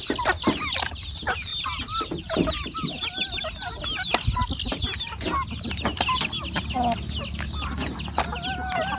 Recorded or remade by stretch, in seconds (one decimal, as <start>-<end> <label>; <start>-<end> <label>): 0.0-9.0 recorded